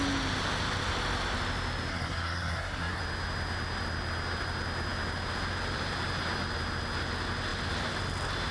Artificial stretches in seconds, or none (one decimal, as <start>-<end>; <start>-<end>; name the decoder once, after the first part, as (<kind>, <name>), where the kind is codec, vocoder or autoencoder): 1.9-3.0 (codec, SNAC)